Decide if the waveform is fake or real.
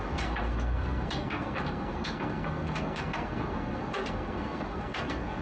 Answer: fake